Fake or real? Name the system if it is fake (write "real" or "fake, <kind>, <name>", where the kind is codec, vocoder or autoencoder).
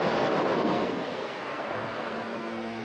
fake, codec, SNAC